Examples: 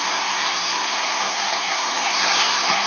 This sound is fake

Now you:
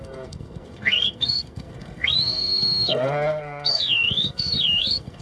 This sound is fake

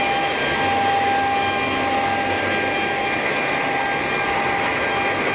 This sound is real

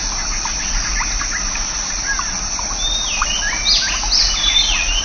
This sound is real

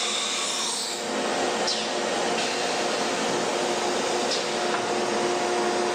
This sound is real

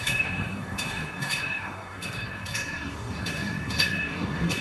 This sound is fake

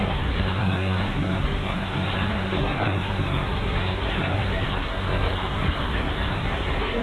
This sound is fake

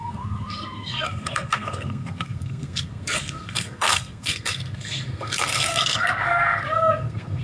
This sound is fake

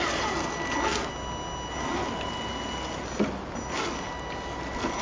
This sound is real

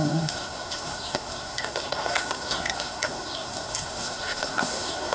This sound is fake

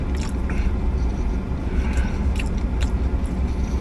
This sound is real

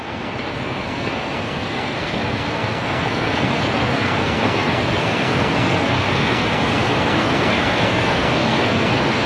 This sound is fake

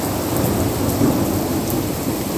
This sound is real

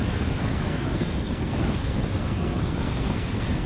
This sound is fake